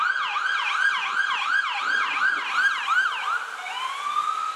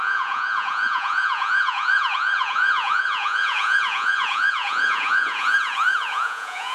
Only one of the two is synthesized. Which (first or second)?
second